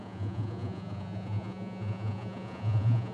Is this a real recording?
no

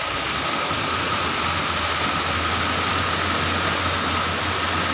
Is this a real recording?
yes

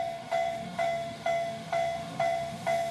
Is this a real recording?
no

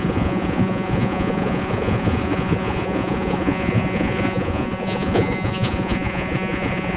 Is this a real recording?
no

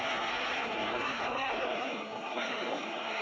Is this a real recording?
no